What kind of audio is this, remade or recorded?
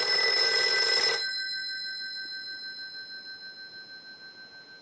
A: recorded